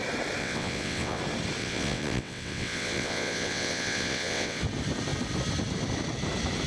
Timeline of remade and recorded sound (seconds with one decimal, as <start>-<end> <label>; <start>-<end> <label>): 0.0-0.4 recorded; 0.4-1.2 remade; 1.2-1.6 recorded; 1.6-4.6 remade; 4.6-6.7 recorded